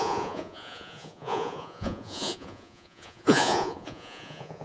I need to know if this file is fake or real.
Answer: fake